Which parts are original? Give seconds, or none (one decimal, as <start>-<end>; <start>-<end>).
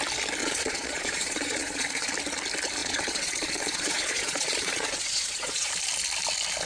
0.0-0.4; 2.1-2.8; 5.7-6.7